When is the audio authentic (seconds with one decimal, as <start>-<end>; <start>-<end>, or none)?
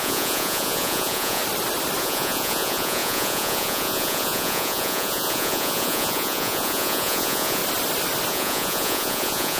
1.4-2.0; 7.6-8.3